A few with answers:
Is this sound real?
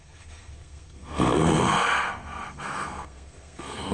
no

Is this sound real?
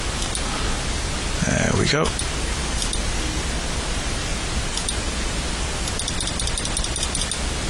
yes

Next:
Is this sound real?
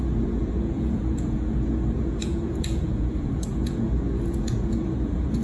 no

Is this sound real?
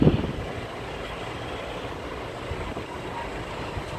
yes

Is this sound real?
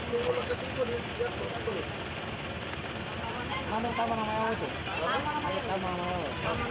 yes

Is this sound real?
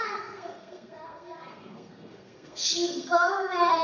no